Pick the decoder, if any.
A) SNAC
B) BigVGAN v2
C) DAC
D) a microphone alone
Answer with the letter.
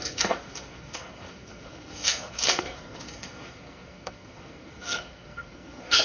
A